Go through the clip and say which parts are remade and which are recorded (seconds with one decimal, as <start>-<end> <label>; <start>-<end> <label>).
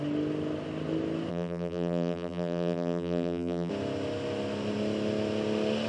0.0-1.3 recorded; 1.3-3.7 remade; 3.7-5.9 recorded